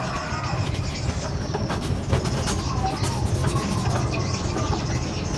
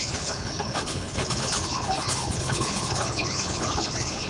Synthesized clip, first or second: second